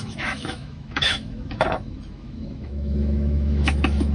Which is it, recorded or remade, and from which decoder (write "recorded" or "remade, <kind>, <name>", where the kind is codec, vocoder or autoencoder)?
remade, autoencoder, DAC-VAE